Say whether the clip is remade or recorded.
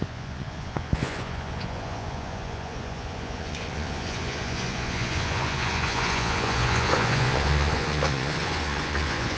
remade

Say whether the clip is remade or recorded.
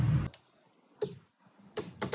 recorded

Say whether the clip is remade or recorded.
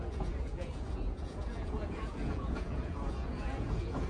remade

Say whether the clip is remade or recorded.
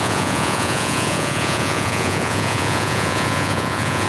remade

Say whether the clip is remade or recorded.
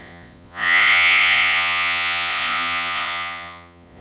remade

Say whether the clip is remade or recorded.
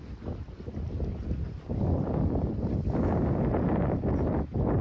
recorded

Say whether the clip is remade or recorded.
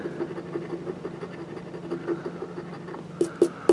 recorded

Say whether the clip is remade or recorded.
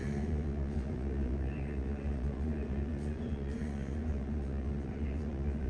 remade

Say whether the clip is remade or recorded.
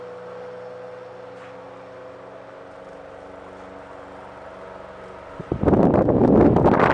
recorded